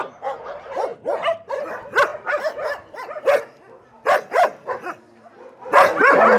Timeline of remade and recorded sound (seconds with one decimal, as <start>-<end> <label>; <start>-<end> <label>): 0.0-6.4 recorded